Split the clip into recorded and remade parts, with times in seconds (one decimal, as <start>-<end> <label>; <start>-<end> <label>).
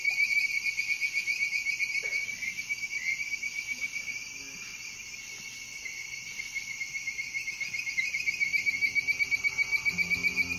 0.0-0.8 remade; 0.8-6.0 recorded; 6.0-6.8 remade; 6.8-10.6 recorded